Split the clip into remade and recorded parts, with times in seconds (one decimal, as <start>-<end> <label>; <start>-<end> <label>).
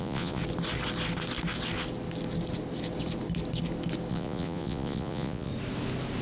0.0-0.4 remade; 0.4-4.1 recorded; 4.1-5.5 remade; 5.5-6.2 recorded